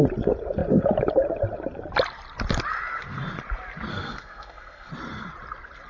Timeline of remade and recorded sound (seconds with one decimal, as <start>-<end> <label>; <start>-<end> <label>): 0.0-3.9 recorded; 3.9-4.9 remade; 4.9-5.9 recorded